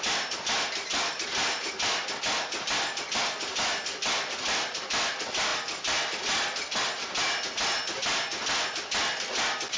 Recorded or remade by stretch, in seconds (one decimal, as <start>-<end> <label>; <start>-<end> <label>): 0.0-9.8 recorded